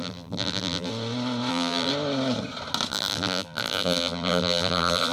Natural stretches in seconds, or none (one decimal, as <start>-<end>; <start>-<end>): 0.9-1.5; 1.9-2.9

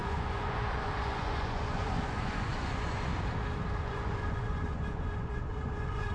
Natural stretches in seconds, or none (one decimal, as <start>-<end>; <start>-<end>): 3.1-3.8

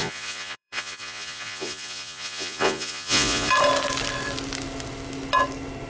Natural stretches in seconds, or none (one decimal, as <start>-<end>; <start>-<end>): 3.5-5.9